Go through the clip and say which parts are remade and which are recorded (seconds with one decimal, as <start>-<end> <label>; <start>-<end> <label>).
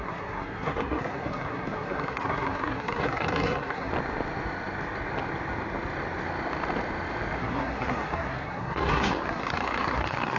0.0-3.9 remade; 3.9-7.4 recorded; 7.4-10.4 remade